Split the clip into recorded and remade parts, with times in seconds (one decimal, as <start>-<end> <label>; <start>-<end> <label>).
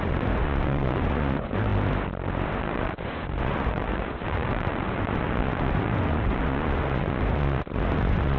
0.0-1.7 remade; 1.7-2.6 recorded; 2.6-8.4 remade